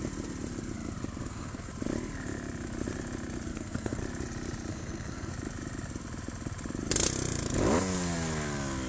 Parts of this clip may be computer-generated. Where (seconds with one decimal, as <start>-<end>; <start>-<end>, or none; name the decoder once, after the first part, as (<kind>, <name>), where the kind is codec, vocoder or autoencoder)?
1.2-1.7 (codec, SNAC); 3.5-4.0; 4.7-5.3